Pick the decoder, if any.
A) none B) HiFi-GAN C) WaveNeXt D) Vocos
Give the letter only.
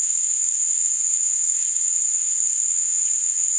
C